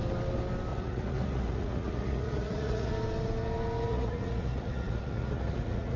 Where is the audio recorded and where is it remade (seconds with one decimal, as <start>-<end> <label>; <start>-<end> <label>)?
0.0-0.7 recorded; 0.7-2.9 remade; 2.9-3.9 recorded; 3.9-6.0 remade